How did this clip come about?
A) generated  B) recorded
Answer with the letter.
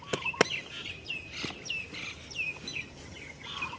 B